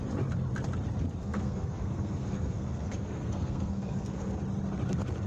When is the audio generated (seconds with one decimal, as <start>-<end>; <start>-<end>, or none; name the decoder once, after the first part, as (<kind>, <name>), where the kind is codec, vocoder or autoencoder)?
1.2-4.4 (codec, SNAC)